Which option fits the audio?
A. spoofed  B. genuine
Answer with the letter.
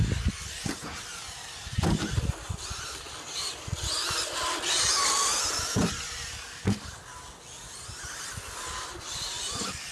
B